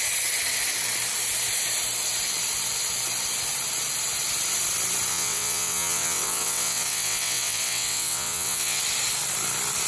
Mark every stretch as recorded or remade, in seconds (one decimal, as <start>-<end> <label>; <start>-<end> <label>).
0.0-5.1 recorded; 5.1-8.8 remade; 8.8-9.9 recorded